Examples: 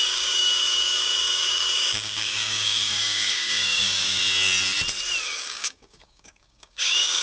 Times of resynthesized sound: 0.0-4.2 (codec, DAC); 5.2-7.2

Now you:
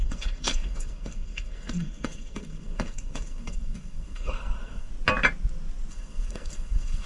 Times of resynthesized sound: 0.0-4.9 (codec, SNAC); 5.9-7.1

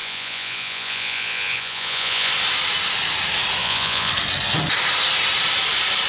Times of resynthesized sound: 0.0-2.3 (vocoder, Vocos); 3.6-4.1

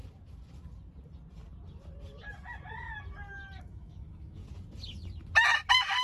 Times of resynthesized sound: 3.6-4.4 (autoencoder, DAC-VAE)

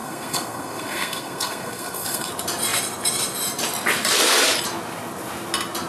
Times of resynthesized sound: 0.0-2.3 (codec, SNAC)

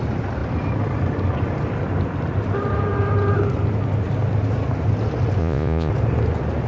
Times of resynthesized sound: 5.4-5.9 (vocoder, Vocos)

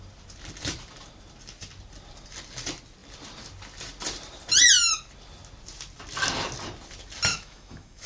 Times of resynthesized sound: 7.3-8.1 (autoencoder, DAC-VAE)